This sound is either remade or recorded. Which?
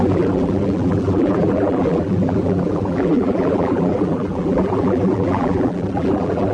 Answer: remade